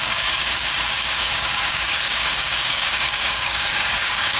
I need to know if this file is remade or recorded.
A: remade